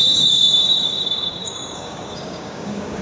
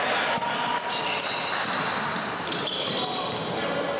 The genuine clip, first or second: second